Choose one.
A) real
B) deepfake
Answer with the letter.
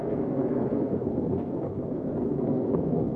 B